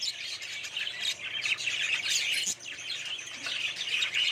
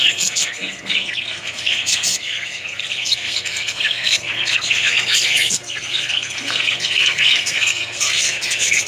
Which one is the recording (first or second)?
first